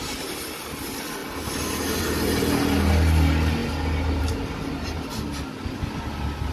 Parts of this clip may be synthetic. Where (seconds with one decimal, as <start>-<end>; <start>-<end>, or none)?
none